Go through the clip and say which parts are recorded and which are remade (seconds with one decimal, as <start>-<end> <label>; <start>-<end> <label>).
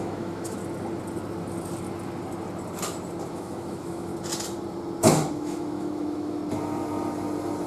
0.0-0.6 remade; 0.6-3.3 recorded; 3.3-4.1 remade; 4.1-5.3 recorded; 5.3-6.4 remade; 6.4-7.7 recorded